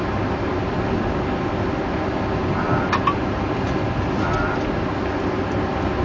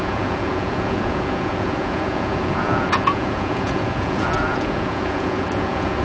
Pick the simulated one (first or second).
second